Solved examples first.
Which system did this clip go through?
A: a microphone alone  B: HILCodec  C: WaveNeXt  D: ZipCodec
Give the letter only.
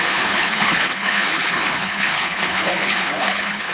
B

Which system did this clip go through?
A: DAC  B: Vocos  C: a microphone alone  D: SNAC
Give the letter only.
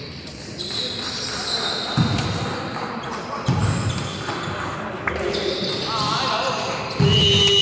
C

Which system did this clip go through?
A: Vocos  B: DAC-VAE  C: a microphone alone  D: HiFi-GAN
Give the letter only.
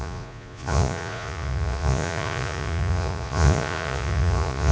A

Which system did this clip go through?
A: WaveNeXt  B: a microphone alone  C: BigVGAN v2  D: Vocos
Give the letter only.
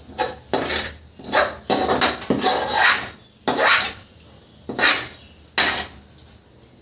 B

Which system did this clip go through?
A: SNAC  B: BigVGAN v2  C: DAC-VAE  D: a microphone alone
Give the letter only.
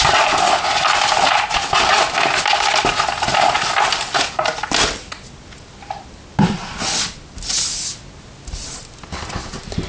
D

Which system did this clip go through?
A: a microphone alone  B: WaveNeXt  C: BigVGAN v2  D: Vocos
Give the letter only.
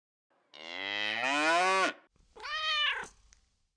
A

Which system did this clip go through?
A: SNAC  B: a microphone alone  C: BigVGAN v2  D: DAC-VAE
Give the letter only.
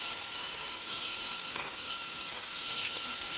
A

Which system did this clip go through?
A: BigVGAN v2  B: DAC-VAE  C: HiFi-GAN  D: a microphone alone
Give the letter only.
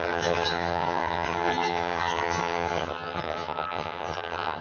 C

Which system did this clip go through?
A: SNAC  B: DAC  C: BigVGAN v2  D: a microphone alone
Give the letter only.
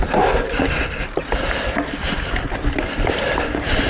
D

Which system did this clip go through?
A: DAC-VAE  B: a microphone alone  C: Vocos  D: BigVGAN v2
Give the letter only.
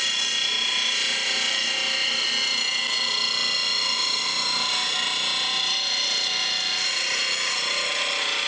B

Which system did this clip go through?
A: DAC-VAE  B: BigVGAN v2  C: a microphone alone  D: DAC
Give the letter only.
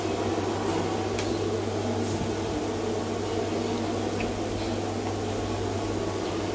C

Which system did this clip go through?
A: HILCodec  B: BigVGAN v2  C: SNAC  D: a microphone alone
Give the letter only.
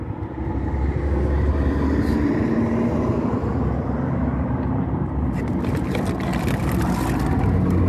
D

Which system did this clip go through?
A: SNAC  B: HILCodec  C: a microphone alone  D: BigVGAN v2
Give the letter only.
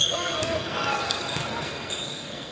A